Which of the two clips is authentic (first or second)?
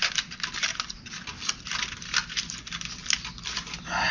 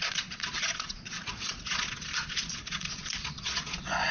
first